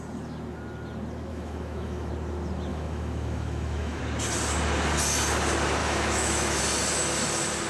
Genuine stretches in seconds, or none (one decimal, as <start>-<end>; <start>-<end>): 0.0-1.3; 2.1-2.7; 4.0-5.8; 6.6-7.7

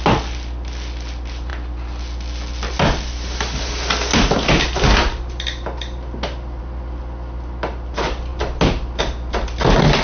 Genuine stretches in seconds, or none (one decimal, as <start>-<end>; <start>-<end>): 0.0-10.0

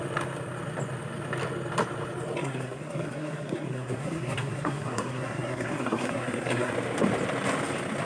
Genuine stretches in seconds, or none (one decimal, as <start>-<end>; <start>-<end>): 0.0-2.4; 6.7-8.1

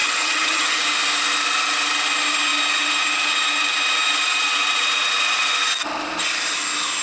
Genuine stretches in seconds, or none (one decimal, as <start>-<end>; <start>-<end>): 0.8-7.0

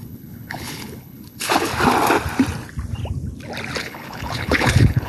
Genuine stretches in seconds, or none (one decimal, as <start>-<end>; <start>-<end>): 1.7-3.8